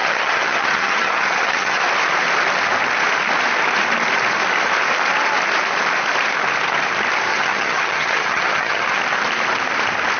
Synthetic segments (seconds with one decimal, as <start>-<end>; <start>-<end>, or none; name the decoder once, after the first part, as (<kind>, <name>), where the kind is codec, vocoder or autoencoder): 0.0-1.8 (vocoder, HiFi-GAN); 7.3-9.0